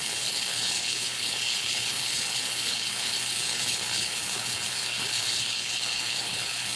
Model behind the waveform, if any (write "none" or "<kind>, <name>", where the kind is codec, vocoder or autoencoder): codec, HILCodec